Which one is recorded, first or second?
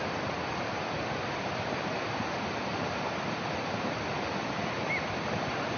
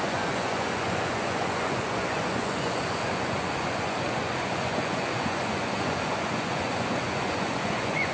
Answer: first